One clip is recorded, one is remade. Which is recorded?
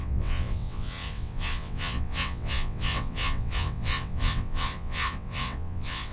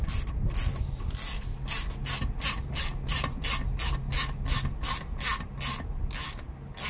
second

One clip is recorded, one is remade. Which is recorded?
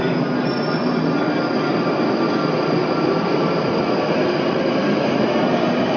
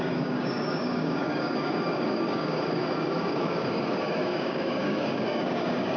first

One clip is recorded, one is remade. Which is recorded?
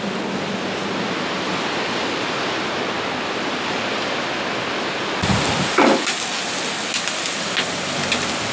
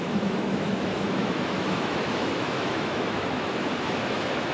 first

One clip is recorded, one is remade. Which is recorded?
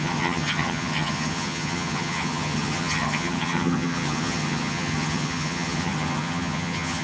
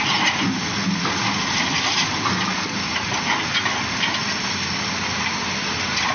second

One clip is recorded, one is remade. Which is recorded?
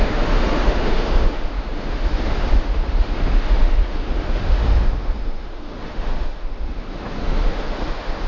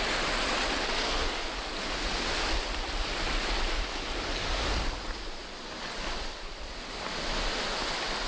second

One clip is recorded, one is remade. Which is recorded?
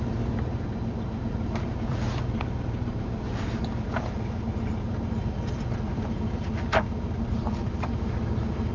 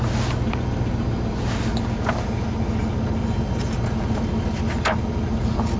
second